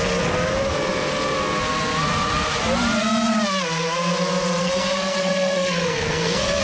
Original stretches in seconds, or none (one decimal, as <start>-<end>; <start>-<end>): 0.0-4.6